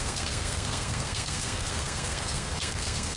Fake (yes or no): yes